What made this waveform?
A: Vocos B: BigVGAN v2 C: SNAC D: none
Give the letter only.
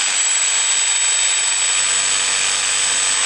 D